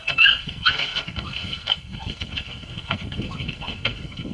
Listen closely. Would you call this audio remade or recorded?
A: remade